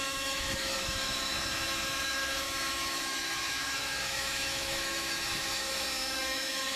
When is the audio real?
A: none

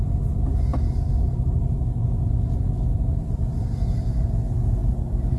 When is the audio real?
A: 0.0-5.4

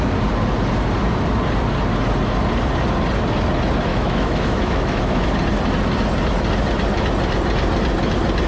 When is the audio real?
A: 0.0-3.9; 5.3-8.5

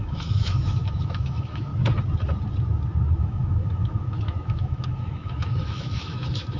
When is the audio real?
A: 1.7-3.2

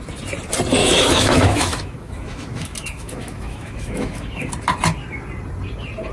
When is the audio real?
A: 0.0-0.8; 4.5-6.1